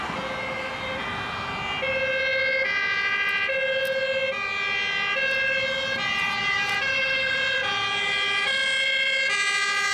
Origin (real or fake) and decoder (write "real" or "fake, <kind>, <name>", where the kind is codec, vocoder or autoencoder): real